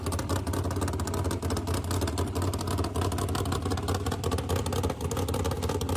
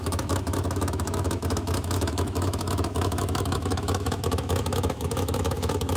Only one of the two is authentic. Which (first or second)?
first